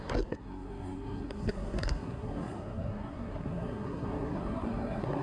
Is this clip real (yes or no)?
no